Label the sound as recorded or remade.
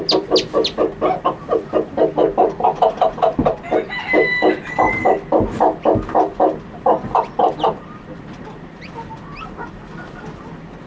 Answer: recorded